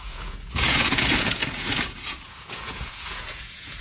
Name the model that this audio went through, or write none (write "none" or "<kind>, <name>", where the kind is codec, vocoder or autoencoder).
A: vocoder, Vocos